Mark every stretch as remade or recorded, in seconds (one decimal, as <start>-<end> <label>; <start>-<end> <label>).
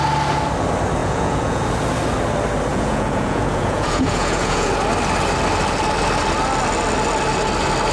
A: 0.0-1.0 recorded; 1.0-1.7 remade; 1.7-2.7 recorded; 2.7-4.7 remade; 4.7-7.9 recorded